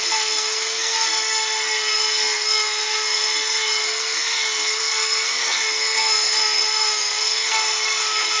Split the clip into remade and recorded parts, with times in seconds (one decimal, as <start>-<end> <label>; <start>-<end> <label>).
0.0-8.4 remade